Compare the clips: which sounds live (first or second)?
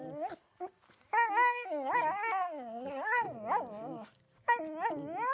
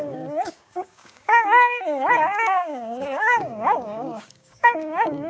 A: first